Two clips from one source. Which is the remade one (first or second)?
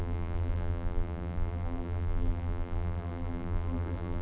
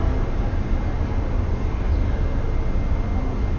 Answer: first